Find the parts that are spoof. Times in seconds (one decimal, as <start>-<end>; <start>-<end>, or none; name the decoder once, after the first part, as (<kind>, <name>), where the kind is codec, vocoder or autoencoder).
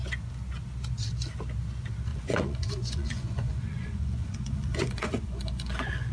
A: 2.1-6.1 (vocoder, Vocos)